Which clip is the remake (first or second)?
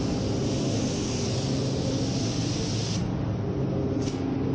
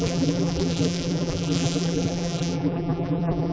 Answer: second